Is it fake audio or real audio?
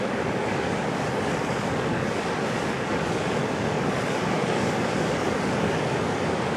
fake